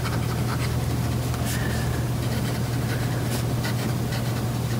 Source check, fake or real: real